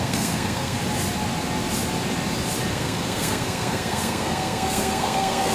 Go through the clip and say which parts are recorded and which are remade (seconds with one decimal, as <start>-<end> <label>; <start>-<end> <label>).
0.0-0.8 remade; 0.8-2.7 recorded; 2.7-5.5 remade